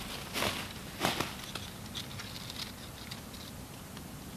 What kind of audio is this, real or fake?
real